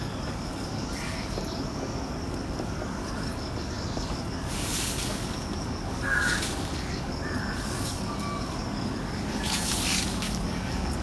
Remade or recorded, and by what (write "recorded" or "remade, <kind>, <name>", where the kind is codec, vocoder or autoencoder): remade, codec, DAC